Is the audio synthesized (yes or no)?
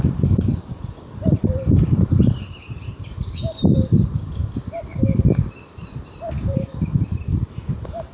yes